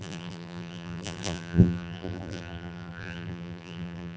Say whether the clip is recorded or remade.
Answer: remade